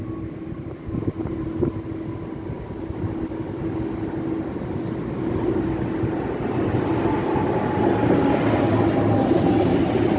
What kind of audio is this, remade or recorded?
recorded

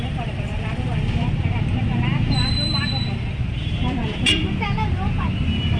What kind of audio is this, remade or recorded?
remade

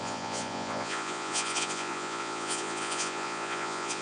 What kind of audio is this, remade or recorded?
remade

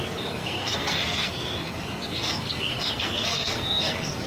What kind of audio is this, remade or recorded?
remade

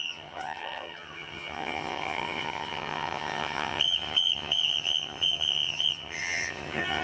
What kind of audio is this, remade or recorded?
remade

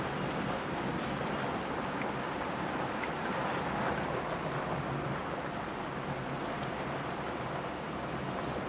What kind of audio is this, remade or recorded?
recorded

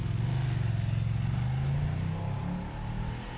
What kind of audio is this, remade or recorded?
recorded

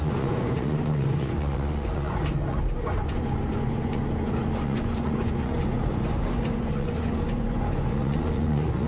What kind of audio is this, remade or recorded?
remade